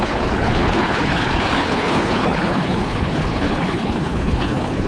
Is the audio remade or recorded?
remade